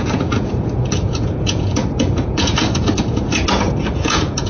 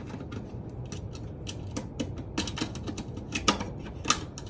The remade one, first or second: first